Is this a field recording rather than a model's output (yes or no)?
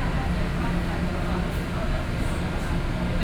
yes